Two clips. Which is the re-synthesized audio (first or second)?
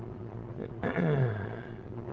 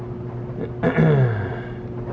first